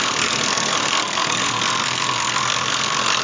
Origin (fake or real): fake